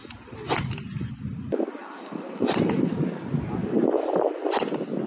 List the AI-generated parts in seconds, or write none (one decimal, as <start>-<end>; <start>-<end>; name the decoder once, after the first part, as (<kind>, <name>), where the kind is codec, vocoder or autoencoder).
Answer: 0.0-2.9 (vocoder, BigVGAN v2); 3.6-4.5

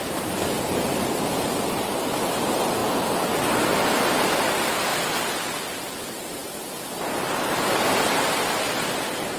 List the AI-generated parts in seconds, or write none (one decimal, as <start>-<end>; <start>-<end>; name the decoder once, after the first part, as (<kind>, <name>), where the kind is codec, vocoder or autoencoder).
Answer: none